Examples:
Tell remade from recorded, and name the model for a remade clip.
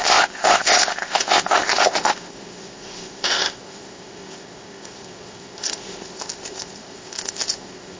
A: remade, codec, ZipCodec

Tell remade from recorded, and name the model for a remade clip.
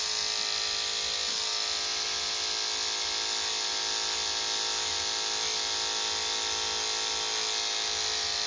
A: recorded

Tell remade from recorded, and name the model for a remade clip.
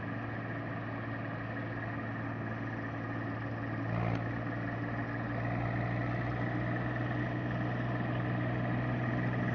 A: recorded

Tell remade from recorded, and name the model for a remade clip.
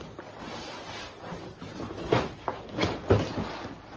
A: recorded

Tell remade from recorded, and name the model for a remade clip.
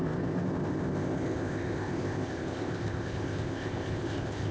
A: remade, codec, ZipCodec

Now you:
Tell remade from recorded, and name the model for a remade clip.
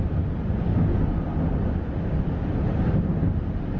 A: recorded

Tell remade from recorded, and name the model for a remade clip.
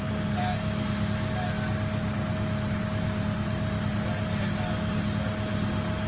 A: recorded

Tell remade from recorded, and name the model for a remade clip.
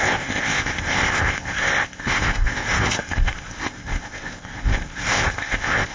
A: remade, codec, ZipCodec